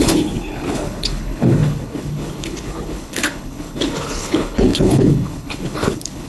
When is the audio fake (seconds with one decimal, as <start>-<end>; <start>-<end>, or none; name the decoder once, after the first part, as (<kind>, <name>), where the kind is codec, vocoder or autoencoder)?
0.0-6.3 (codec, HILCodec)